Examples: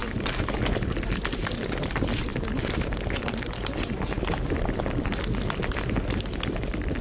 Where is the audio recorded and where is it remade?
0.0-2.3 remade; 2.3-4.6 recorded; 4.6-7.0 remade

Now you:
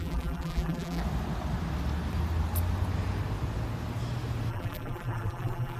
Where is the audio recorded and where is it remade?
0.0-1.0 remade; 1.0-4.5 recorded; 4.5-5.8 remade

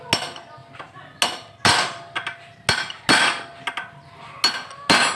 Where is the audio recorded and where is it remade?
0.0-5.2 recorded

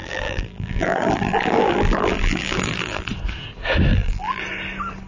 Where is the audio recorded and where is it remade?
0.0-3.1 remade; 3.1-3.9 recorded; 3.9-4.4 remade; 4.4-5.1 recorded

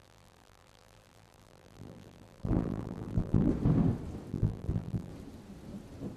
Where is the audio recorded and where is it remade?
0.0-3.5 remade; 3.5-4.3 recorded; 4.3-5.1 remade; 5.1-6.2 recorded

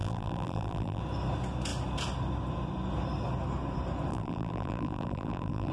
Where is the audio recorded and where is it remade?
0.0-1.0 remade; 1.0-4.1 recorded; 4.1-5.7 remade

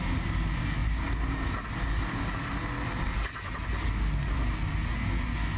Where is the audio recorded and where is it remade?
0.0-5.6 recorded

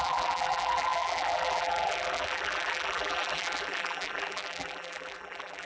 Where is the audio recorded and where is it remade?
0.0-5.7 remade